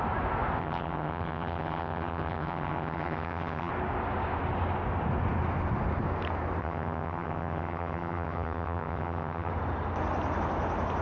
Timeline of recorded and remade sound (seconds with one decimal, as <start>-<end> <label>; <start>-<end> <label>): 0.0-0.6 recorded; 0.6-3.7 remade; 3.7-6.6 recorded; 6.6-9.5 remade; 9.5-11.0 recorded